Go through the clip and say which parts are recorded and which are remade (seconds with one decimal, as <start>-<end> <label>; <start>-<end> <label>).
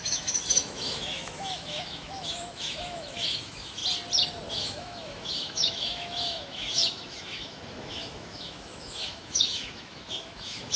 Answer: 0.0-3.8 remade; 3.8-4.5 recorded; 4.5-10.8 remade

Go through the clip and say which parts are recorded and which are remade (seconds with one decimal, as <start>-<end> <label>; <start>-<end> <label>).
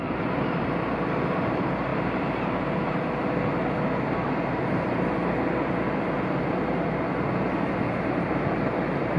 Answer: 0.0-9.2 recorded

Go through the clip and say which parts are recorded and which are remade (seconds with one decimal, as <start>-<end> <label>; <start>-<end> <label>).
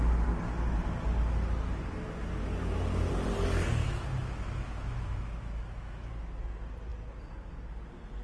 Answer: 0.0-3.8 recorded; 3.8-6.1 remade; 6.1-8.2 recorded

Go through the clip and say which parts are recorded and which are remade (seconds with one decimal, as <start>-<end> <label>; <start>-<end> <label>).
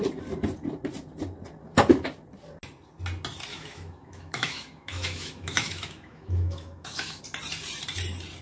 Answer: 0.0-3.5 recorded; 3.5-7.2 remade; 7.2-8.4 recorded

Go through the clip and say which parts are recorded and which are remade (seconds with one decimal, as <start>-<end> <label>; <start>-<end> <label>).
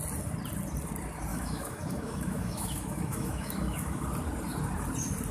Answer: 0.0-1.3 recorded; 1.3-4.0 remade; 4.0-5.3 recorded